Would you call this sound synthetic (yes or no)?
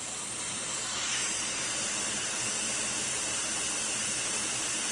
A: no